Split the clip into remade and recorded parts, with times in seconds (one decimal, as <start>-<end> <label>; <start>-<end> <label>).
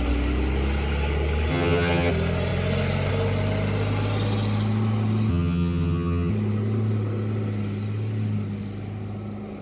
0.0-1.5 recorded; 1.5-2.1 remade; 2.1-5.3 recorded; 5.3-6.3 remade; 6.3-9.6 recorded